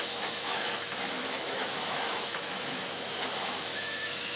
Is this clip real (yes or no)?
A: no